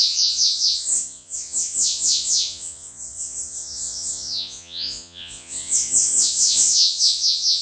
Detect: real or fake fake